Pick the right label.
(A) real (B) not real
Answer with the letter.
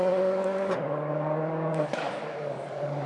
B